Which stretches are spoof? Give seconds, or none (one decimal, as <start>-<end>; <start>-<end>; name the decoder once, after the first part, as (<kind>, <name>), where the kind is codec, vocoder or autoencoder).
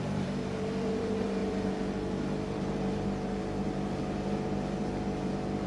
0.0-5.7 (vocoder, BigVGAN v2)